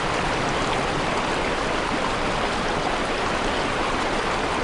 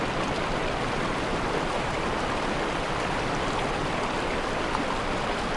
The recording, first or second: second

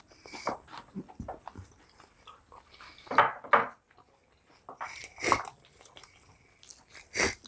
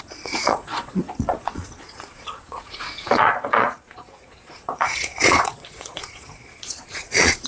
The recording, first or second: first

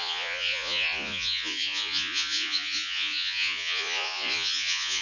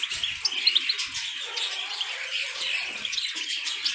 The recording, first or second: second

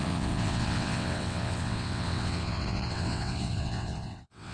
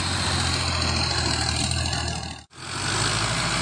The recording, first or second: second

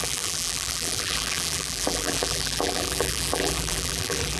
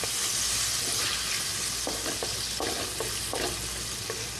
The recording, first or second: second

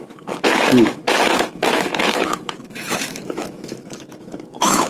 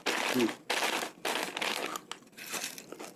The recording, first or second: second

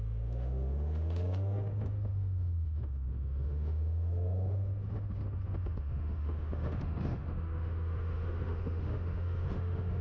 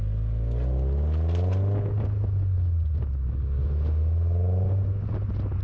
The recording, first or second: second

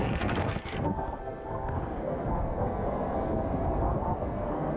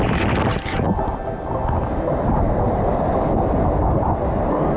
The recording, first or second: second